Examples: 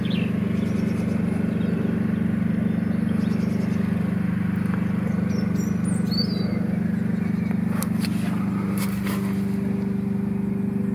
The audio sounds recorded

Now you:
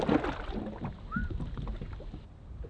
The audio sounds recorded